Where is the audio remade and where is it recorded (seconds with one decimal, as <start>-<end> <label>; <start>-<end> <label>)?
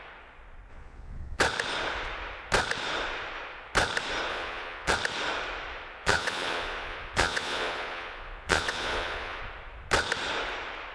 0.0-0.7 recorded; 0.7-1.4 remade; 1.4-4.3 recorded; 4.3-4.9 remade; 4.9-6.0 recorded; 6.0-9.4 remade; 9.4-10.9 recorded